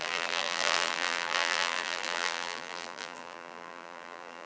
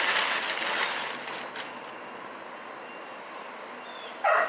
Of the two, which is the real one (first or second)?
second